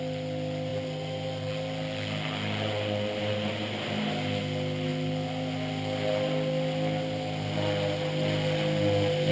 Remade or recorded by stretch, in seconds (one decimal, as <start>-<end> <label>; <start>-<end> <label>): 0.0-9.3 recorded